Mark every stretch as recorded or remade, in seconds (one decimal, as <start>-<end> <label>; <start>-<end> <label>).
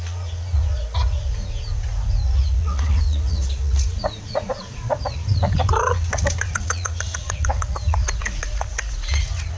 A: 0.0-9.6 remade